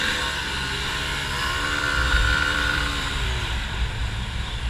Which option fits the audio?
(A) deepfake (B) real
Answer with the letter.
A